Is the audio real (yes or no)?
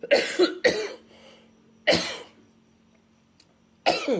yes